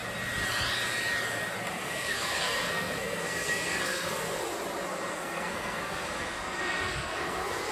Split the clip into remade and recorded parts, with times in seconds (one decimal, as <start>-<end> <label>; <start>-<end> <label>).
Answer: 0.0-1.7 recorded; 1.7-4.4 remade; 4.4-5.1 recorded; 5.1-7.7 remade

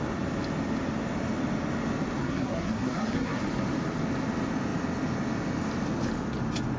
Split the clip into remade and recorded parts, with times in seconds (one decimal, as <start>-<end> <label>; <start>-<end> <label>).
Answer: 0.0-2.2 recorded; 2.2-3.4 remade; 3.4-6.8 recorded

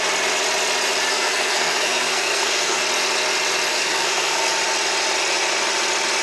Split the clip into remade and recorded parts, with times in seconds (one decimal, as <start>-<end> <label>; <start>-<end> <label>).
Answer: 0.0-1.1 recorded; 1.1-2.8 remade; 2.8-3.7 recorded; 3.7-4.5 remade; 4.5-6.2 recorded